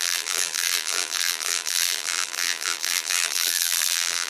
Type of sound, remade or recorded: remade